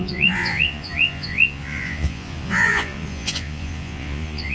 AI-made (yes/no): yes